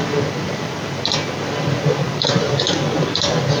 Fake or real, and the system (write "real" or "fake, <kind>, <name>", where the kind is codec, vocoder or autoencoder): real